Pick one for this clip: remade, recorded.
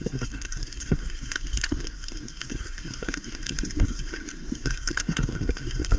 remade